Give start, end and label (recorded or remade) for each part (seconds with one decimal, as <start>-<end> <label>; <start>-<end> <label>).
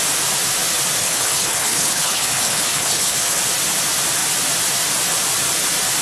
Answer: 0.0-1.0 recorded; 1.0-3.4 remade; 3.4-6.0 recorded